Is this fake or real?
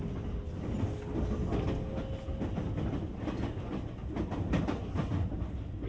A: real